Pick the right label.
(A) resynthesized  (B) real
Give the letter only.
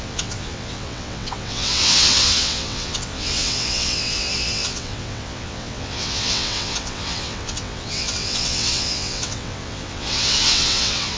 A